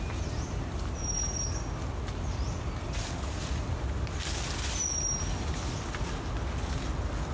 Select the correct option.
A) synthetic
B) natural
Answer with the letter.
B